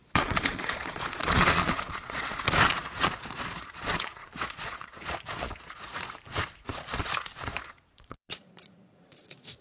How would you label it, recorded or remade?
remade